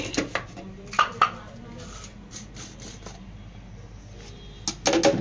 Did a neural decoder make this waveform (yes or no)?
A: no